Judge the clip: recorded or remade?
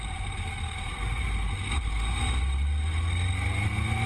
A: recorded